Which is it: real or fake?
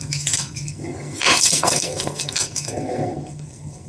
fake